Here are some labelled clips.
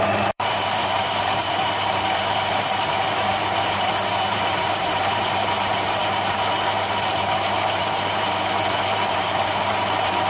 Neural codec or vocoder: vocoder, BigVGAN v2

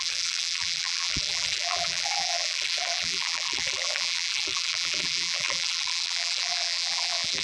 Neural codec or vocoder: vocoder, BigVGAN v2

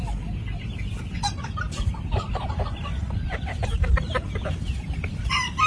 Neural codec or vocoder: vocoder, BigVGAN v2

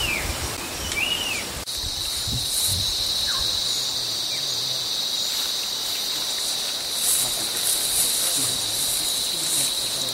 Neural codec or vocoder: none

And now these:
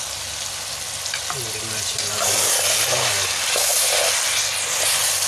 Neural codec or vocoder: none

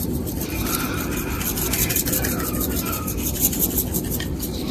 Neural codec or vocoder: none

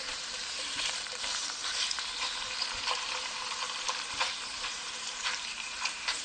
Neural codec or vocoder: vocoder, BigVGAN v2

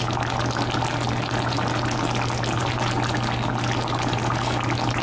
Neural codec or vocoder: none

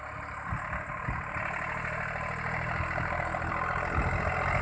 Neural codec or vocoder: none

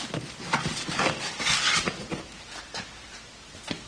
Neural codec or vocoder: vocoder, BigVGAN v2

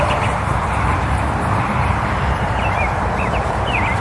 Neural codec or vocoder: vocoder, BigVGAN v2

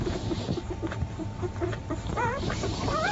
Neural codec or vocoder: vocoder, BigVGAN v2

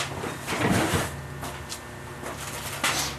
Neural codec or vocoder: none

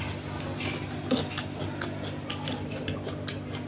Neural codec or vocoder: none